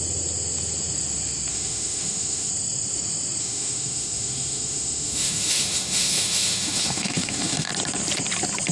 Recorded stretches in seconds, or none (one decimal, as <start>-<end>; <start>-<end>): 0.0-1.5; 2.5-3.4; 7.7-8.7